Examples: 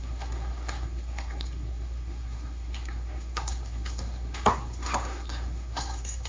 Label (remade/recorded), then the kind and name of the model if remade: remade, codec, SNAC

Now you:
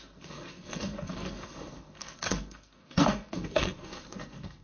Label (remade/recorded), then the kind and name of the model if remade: remade, codec, SNAC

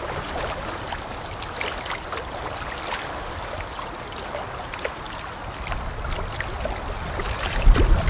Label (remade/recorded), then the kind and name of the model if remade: recorded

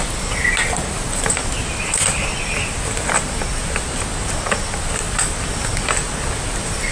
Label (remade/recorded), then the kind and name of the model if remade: recorded